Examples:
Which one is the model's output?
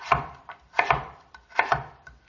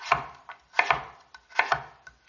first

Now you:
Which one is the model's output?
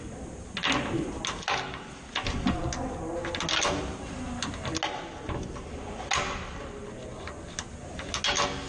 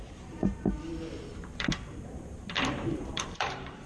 second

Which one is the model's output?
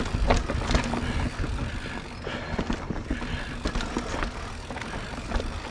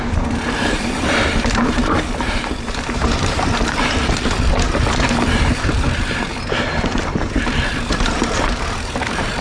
second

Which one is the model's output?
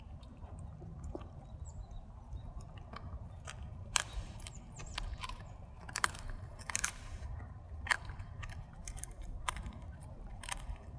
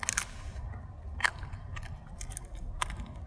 first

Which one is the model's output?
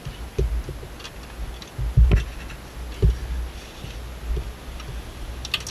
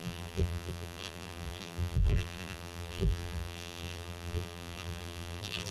second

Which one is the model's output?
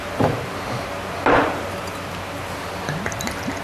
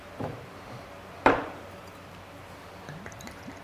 second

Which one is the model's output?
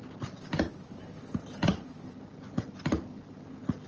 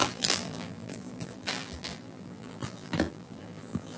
second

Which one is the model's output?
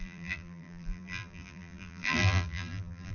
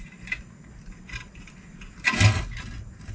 first